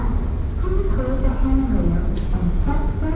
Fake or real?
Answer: real